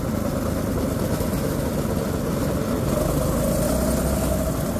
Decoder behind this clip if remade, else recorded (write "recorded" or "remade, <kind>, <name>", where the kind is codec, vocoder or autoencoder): recorded